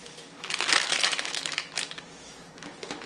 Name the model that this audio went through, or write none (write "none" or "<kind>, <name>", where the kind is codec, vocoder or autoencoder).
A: autoencoder, DAC-VAE